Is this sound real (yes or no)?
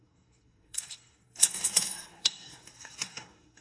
no